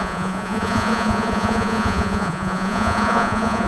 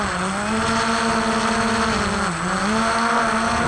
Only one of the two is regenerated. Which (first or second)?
first